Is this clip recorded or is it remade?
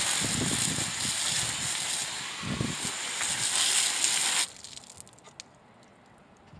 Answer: recorded